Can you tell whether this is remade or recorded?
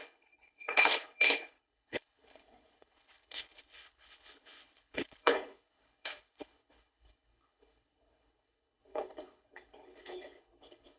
remade